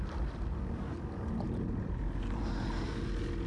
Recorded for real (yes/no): yes